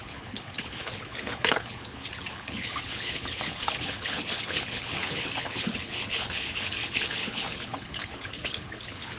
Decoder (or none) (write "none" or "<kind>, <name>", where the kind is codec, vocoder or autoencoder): codec, HILCodec